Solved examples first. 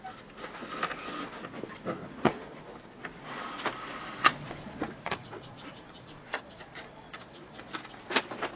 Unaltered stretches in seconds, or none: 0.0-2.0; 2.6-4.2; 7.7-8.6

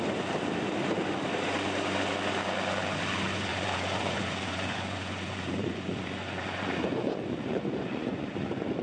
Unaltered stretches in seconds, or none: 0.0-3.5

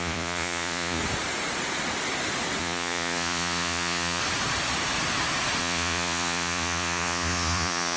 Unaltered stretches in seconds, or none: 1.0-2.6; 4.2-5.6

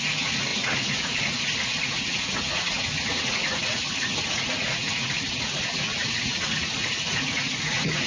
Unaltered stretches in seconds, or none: none

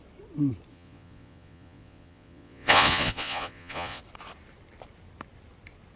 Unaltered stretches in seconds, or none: 0.0-0.7; 4.0-6.0

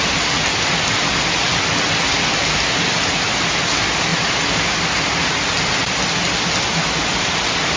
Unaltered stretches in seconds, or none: 0.0-7.8

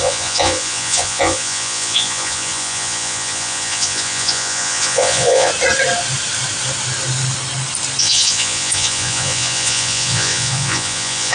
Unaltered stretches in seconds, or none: 5.5-8.0